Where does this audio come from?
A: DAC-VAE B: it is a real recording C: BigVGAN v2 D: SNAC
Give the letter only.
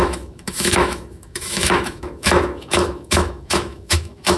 A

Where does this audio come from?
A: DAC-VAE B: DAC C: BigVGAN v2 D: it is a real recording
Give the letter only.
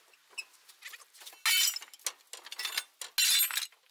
D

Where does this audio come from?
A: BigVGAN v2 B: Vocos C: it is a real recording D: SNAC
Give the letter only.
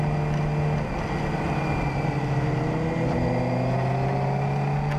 C